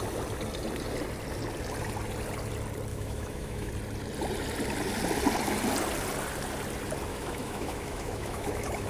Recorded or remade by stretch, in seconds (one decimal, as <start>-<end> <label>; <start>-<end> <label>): 0.0-2.9 recorded; 2.9-3.7 remade; 3.7-7.1 recorded; 7.1-8.9 remade